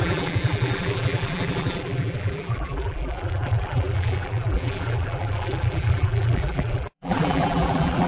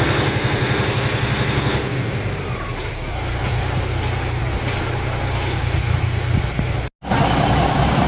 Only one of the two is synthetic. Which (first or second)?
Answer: first